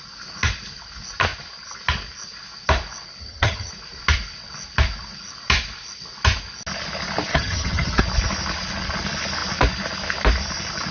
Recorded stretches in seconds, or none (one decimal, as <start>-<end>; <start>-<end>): 0.0-3.2; 3.7-7.3; 8.0-10.9